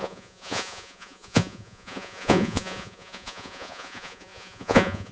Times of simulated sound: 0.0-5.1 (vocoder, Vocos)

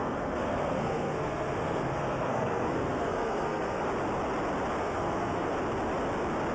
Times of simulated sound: 0.0-3.9 (codec, SNAC); 4.8-5.5

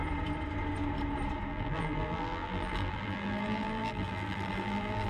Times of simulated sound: 1.5-5.1 (vocoder, BigVGAN v2)